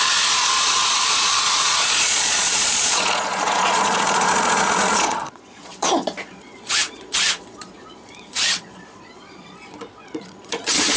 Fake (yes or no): yes